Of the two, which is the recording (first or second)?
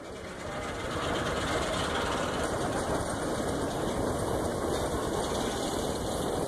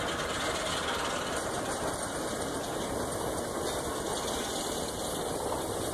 second